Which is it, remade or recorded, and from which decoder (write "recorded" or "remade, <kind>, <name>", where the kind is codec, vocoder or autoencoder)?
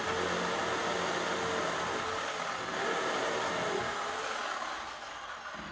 recorded